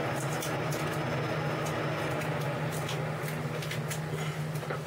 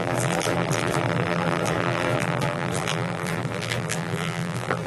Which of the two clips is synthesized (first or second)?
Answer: second